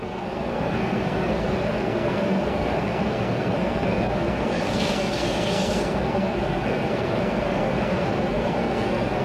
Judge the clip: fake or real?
fake